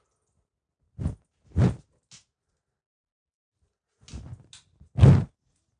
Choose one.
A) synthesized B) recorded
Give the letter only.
B